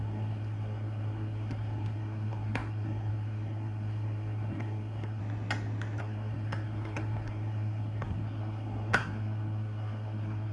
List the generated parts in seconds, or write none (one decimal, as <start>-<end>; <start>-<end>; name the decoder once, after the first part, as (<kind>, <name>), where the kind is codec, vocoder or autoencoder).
0.0-5.2 (codec, SNAC); 6.0-10.5